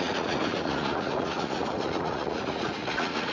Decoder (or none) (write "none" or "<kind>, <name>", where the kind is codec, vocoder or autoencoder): vocoder, Vocos